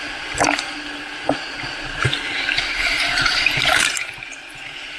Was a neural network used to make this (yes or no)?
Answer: yes